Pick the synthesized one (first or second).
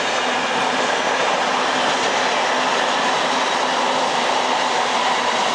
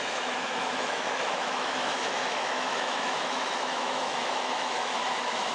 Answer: second